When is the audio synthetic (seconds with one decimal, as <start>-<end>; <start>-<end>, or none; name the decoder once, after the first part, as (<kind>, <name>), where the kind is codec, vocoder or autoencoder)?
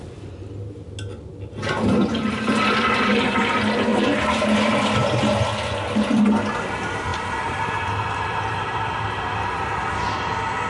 1.9-3.4 (vocoder, BigVGAN v2); 3.9-4.7; 7.1-9.2